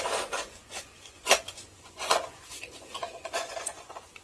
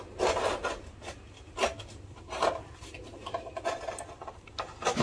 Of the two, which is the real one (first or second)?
second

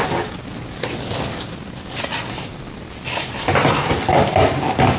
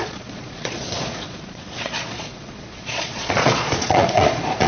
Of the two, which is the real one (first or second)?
first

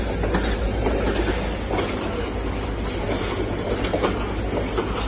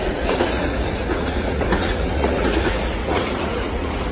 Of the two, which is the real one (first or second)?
first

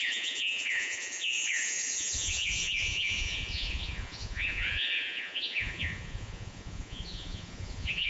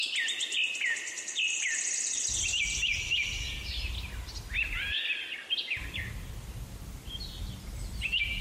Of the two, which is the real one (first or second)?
second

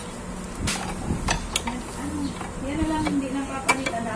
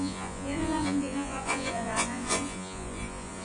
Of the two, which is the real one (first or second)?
first